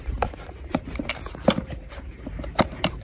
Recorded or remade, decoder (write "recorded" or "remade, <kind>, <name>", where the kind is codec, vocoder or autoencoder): remade, vocoder, BigVGAN v2